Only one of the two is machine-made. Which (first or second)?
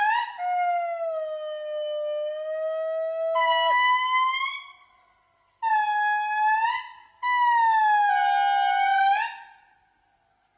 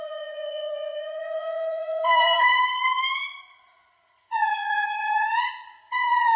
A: second